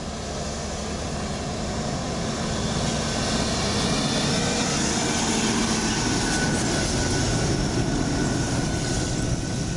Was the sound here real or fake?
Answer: real